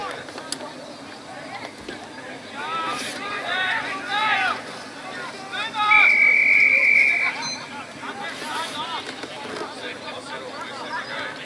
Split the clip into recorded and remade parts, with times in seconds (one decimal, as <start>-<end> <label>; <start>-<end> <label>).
0.0-3.1 recorded; 3.1-5.0 remade; 5.0-11.4 recorded